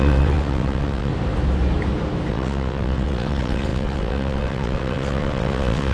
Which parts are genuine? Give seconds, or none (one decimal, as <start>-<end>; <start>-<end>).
1.1-2.3